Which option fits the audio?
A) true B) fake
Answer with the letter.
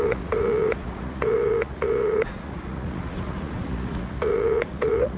B